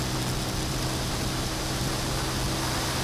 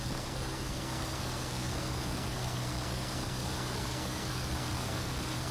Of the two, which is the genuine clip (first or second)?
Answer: first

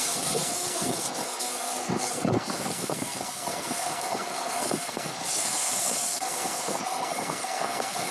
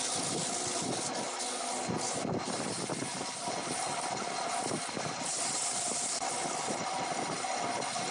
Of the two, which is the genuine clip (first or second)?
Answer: second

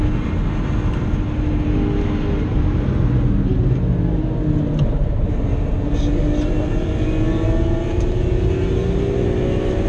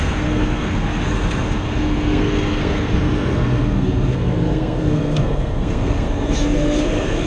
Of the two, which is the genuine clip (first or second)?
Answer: first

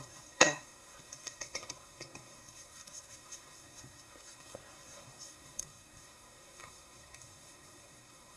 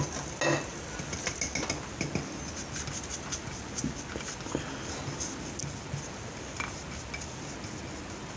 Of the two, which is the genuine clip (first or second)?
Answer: second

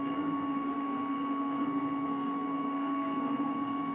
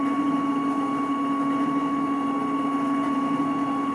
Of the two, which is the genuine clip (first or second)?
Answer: second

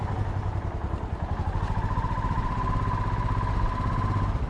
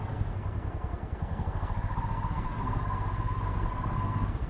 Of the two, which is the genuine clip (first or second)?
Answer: first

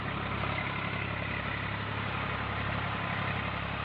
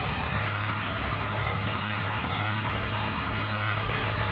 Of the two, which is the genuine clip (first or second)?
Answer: first